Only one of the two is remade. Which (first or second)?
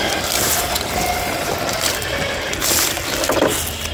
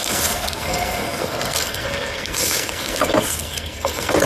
second